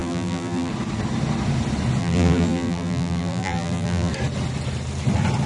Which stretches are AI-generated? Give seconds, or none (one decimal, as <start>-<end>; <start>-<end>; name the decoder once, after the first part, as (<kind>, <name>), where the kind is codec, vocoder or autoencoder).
0.0-0.7 (vocoder, BigVGAN v2); 2.0-4.1